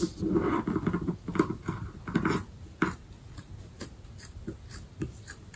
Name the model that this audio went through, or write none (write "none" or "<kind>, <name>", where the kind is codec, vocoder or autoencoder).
none